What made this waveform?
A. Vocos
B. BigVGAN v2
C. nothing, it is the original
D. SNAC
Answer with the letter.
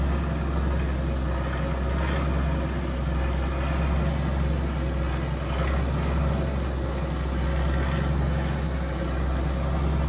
C